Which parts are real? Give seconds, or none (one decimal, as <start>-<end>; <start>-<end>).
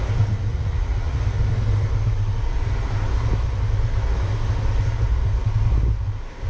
0.0-0.5; 1.2-6.5